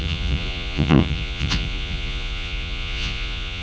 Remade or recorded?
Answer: remade